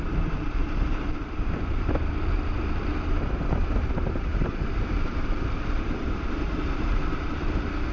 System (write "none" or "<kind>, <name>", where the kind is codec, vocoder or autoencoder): vocoder, BigVGAN v2